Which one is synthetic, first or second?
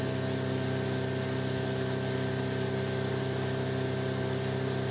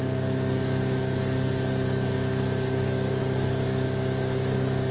second